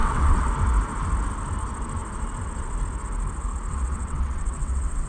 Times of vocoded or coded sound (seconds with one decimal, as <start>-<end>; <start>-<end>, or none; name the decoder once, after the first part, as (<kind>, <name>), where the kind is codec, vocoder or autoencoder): 0.0-0.5 (vocoder, WaveNeXt); 3.7-5.1